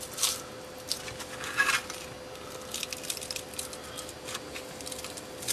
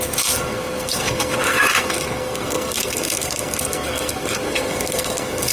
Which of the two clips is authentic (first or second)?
first